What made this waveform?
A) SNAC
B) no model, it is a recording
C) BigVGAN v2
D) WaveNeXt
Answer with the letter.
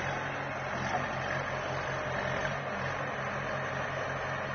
B